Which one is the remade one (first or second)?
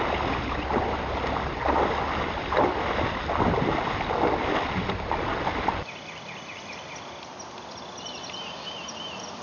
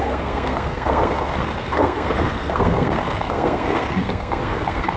second